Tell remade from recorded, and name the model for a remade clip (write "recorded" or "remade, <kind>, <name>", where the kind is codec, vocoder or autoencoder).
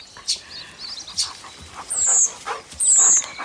recorded